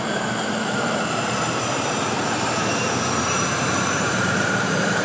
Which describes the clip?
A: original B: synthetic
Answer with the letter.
B